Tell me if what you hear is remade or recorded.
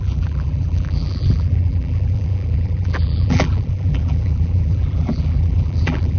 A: remade